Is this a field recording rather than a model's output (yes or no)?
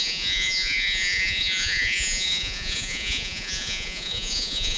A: no